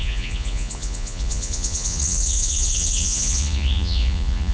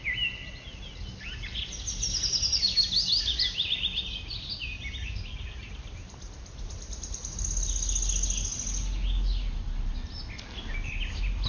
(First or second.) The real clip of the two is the second